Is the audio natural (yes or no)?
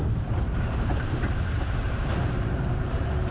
no